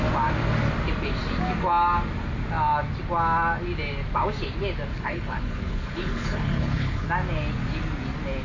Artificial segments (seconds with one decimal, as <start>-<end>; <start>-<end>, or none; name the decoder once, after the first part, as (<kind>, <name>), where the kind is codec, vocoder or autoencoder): 4.9-7.1 (codec, HILCodec)